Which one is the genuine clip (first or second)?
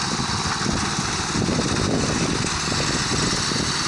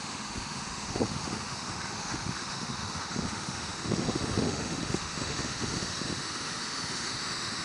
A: first